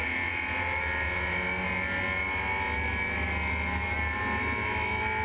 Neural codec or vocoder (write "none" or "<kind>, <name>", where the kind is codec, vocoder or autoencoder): none